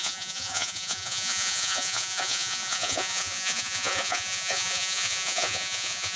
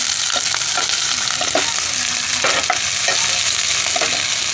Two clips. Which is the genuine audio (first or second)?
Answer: second